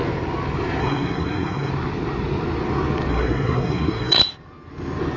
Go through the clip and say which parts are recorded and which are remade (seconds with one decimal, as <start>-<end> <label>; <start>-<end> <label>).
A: 0.0-0.8 recorded; 0.8-1.7 remade; 1.7-3.1 recorded; 3.1-4.2 remade; 4.2-5.2 recorded